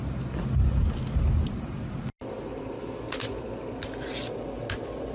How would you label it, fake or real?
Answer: real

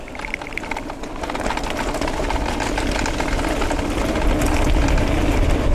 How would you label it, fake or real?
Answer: real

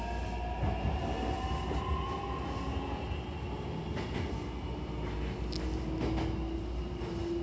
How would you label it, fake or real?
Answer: real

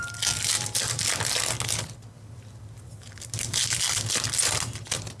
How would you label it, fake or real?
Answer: real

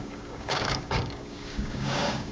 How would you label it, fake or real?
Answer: fake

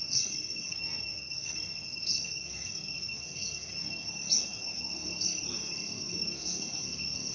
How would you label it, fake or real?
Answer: fake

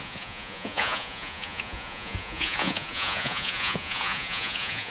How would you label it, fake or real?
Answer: fake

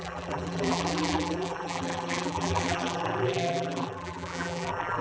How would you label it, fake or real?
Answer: fake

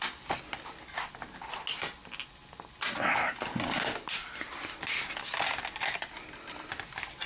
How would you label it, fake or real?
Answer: real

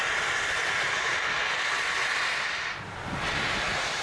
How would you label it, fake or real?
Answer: real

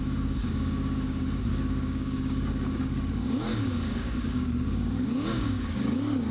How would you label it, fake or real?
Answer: fake